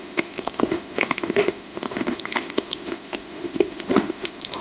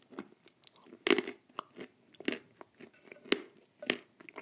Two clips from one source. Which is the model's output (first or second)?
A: first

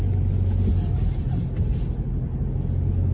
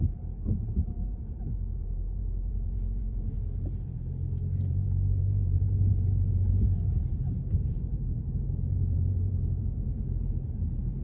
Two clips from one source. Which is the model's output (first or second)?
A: second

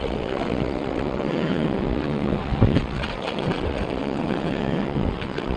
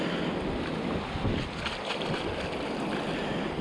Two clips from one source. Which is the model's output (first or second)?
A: first